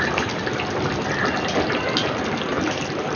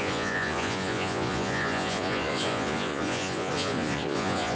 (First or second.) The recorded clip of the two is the first